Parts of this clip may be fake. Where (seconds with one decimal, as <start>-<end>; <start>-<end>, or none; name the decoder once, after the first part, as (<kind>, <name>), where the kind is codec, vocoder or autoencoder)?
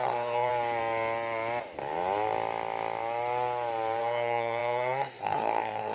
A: 0.0-0.5 (codec, SNAC); 4.0-5.9